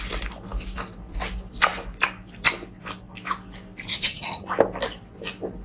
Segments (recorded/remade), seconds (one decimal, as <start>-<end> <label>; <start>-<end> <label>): 0.0-3.9 recorded; 3.9-4.5 remade; 4.5-5.6 recorded